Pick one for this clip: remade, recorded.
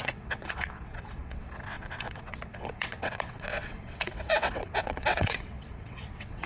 remade